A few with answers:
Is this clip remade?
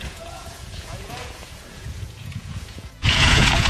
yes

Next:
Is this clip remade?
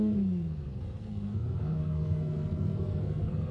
yes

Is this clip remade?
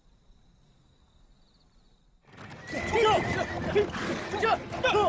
no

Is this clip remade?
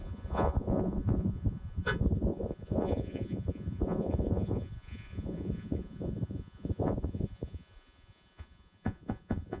yes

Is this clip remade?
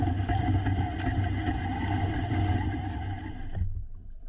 no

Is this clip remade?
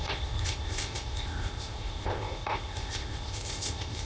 yes